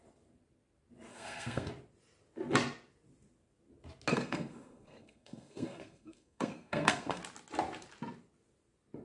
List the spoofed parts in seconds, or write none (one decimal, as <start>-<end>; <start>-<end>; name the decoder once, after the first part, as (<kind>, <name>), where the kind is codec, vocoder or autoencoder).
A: 1.1-1.7 (codec, SNAC); 4.1-7.2